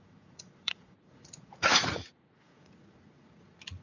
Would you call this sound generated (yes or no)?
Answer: yes